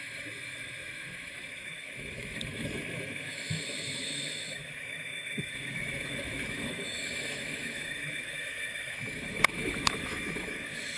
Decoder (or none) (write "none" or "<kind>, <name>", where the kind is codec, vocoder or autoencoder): autoencoder, DAC-VAE